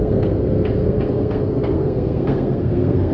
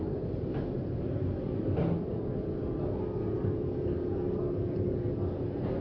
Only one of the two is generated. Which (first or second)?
first